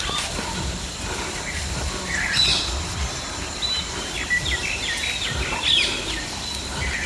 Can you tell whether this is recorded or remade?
recorded